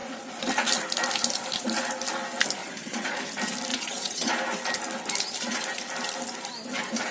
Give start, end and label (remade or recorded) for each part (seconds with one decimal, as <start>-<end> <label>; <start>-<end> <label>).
0.0-2.6 recorded; 2.6-3.2 remade; 3.2-3.7 recorded; 3.7-4.3 remade; 4.3-7.1 recorded